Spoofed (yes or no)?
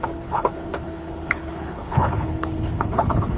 yes